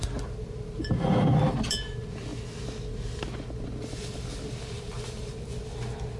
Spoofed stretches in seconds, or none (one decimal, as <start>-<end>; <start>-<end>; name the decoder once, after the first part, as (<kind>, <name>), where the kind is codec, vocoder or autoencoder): none